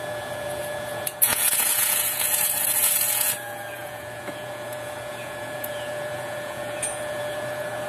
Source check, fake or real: fake